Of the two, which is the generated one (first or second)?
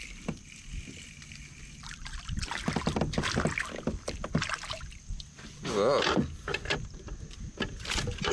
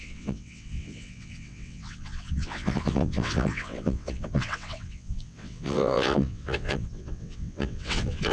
second